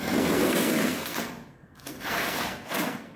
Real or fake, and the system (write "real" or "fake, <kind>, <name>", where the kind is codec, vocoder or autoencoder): fake, codec, SNAC